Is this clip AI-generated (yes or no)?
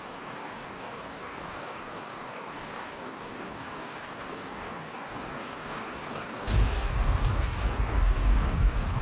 yes